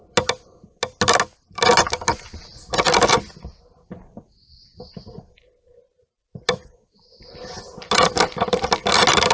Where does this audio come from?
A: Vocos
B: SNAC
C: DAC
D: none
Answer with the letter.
D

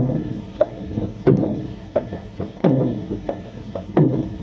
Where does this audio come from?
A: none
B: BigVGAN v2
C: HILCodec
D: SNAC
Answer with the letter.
D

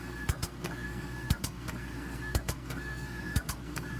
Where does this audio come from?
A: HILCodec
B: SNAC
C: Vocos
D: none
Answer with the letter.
B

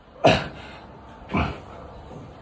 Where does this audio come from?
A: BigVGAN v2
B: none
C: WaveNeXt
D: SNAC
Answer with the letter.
B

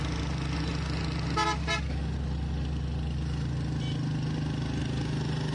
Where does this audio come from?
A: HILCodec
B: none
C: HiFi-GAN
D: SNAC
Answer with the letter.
B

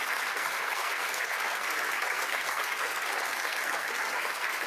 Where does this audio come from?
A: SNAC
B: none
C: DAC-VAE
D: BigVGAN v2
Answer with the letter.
A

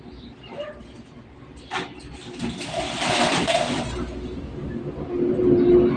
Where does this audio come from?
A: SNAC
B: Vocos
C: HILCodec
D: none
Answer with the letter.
D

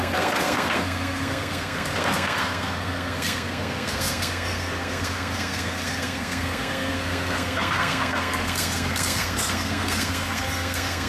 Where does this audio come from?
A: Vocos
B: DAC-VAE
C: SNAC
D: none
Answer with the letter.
C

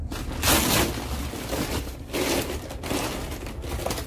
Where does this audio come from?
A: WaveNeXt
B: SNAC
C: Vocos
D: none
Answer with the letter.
D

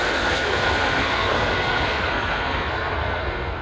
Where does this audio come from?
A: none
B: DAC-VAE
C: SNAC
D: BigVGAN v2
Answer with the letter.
C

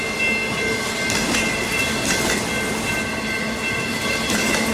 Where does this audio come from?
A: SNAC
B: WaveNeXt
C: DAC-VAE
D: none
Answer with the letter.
D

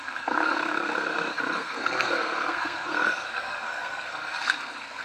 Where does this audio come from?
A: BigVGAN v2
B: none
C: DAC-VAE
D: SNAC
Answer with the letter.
D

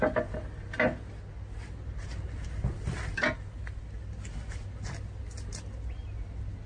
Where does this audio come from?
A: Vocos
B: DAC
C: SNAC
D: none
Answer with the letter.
D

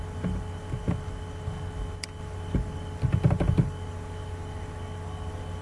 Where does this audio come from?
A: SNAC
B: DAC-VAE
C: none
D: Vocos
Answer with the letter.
C